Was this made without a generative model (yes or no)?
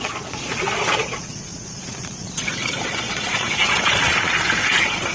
no